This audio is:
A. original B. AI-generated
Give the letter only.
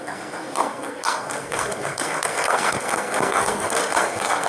B